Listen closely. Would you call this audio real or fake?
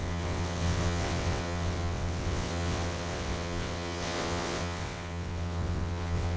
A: fake